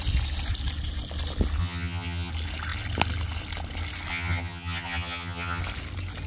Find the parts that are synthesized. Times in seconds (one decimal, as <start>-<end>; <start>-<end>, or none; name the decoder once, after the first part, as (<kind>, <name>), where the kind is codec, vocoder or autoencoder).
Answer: 1.6-2.3 (vocoder, HiFi-GAN); 4.1-5.6